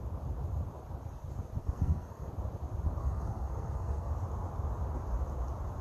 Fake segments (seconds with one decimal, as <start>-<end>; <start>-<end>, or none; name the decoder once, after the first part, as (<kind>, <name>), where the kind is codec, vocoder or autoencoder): 1.6-2.3 (codec, SNAC); 3.0-4.1